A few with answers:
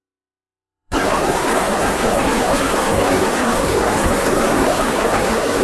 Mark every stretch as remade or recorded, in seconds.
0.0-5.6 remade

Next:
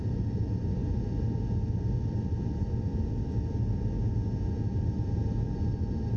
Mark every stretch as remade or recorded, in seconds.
0.0-6.2 recorded

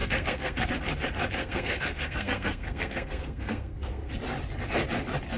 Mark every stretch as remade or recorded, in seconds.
0.0-0.7 remade; 0.7-1.4 recorded; 1.4-4.1 remade; 4.1-5.4 recorded

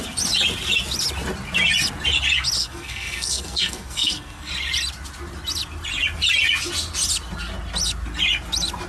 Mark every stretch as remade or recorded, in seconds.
0.0-2.6 recorded; 2.6-4.5 remade; 4.5-8.9 recorded

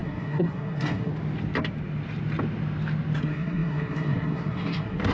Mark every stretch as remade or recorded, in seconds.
0.0-1.1 remade; 1.1-3.2 recorded; 3.2-5.1 remade

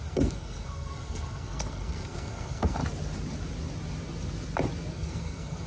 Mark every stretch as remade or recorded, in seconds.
0.0-2.8 remade; 2.8-4.9 recorded; 4.9-5.7 remade

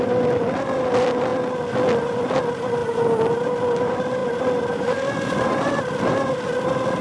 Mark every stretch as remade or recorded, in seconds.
0.0-7.0 recorded

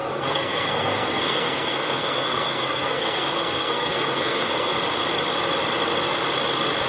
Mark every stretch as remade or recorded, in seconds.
0.0-4.7 remade; 4.7-6.9 recorded